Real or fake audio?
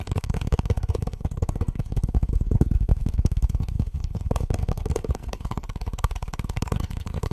fake